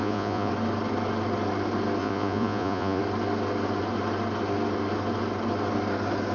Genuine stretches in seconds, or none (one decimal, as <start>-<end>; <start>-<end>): 0.5-2.0; 3.0-6.3

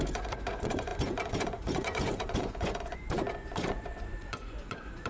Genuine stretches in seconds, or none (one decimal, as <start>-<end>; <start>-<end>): none

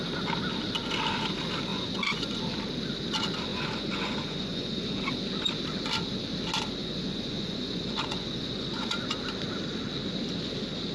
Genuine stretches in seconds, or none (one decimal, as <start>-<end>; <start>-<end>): 0.0-1.7; 2.4-3.5; 5.1-6.8; 9.0-10.9

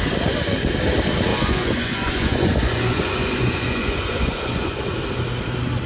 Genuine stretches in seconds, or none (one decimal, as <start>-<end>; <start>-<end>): 0.0-1.3; 4.8-5.9

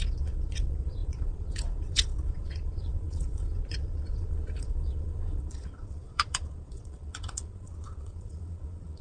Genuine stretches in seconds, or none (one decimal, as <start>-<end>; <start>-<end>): none

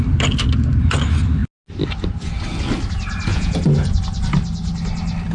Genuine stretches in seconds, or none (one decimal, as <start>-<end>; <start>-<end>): 0.0-3.3; 4.0-5.3

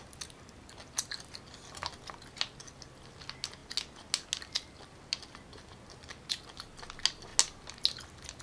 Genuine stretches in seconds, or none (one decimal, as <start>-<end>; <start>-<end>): 0.0-8.4

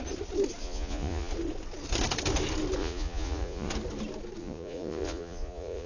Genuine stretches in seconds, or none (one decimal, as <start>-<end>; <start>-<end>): 0.0-0.6; 1.3-2.8; 3.7-4.4